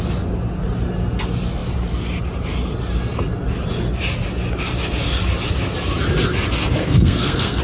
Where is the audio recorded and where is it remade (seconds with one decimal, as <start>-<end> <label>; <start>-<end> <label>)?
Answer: 0.0-6.8 recorded; 6.8-7.6 remade